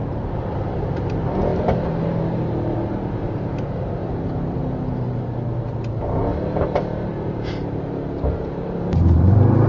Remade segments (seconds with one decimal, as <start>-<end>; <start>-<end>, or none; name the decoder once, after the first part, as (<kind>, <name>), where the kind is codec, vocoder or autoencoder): 1.5-3.6 (vocoder, BigVGAN v2); 4.0-4.6; 6.3-9.7